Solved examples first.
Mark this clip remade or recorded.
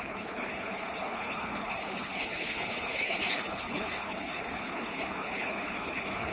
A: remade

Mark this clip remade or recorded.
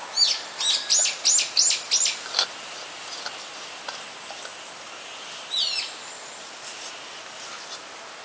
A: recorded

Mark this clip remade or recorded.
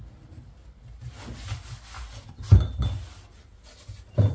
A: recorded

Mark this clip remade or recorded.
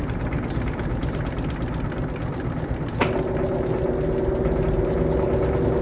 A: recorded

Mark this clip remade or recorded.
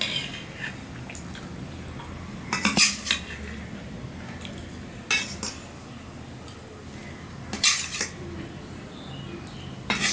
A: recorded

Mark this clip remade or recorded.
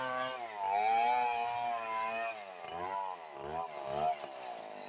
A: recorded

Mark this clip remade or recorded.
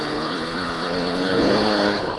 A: remade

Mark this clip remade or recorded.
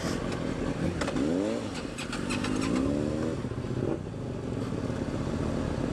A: recorded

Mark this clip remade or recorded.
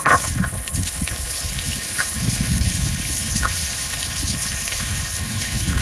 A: remade